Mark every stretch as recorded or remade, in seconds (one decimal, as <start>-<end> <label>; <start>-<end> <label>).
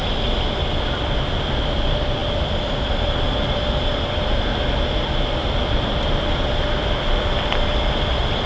0.0-2.2 recorded; 2.2-7.0 remade; 7.0-8.5 recorded